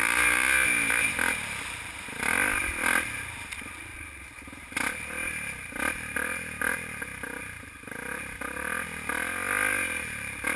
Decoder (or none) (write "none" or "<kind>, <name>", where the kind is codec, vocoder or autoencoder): none